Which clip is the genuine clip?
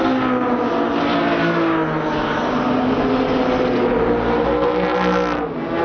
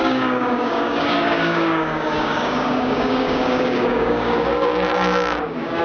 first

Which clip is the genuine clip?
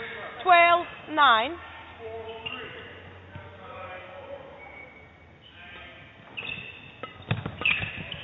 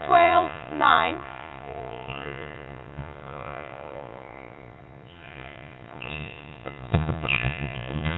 first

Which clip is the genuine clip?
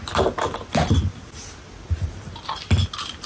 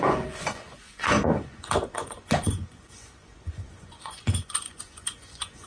first